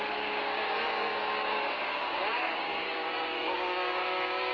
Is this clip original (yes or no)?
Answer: no